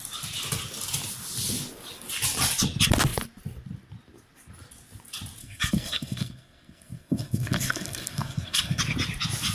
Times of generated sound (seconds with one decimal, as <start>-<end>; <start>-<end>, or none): 5.4-8.8